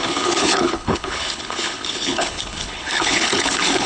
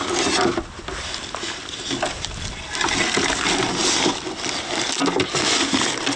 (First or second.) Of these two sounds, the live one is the second